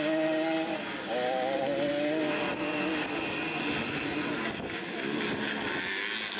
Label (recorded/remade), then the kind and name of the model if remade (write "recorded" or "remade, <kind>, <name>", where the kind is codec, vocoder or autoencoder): recorded